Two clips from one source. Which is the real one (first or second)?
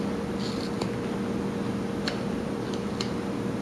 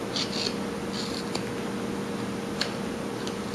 second